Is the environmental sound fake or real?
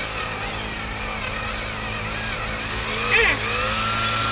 real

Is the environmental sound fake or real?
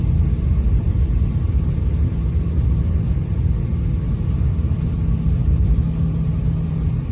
real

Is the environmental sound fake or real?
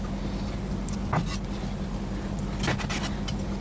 real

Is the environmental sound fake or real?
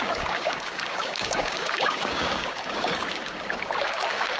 fake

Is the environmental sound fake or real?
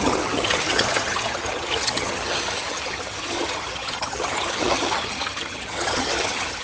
fake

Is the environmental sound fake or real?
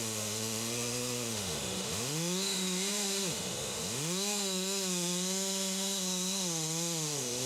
fake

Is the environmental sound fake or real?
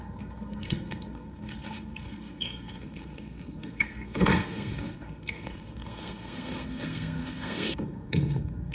fake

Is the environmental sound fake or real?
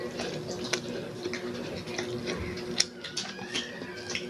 real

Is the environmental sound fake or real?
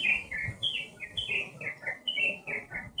real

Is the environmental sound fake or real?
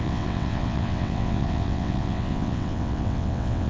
fake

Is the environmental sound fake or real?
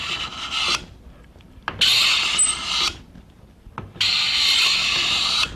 real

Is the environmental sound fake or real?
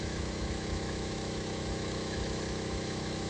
fake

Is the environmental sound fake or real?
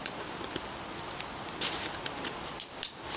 real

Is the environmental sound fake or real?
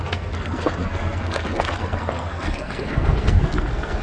fake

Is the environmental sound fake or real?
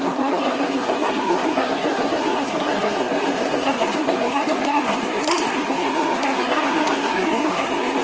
fake